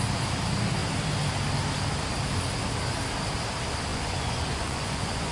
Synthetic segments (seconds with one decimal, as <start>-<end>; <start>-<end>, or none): 3.9-5.3